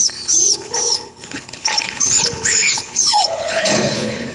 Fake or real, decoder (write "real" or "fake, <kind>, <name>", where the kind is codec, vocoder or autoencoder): fake, codec, HILCodec